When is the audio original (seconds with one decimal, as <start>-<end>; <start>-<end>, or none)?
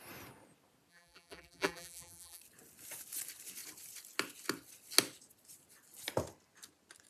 0.0-0.9; 2.4-7.1